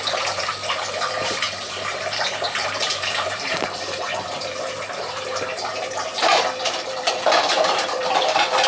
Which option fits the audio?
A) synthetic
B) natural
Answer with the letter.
A